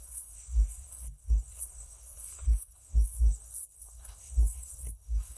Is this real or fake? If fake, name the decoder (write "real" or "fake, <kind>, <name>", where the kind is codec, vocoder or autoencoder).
fake, codec, SNAC